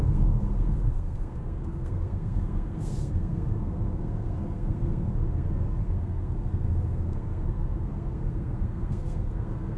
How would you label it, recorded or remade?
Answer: remade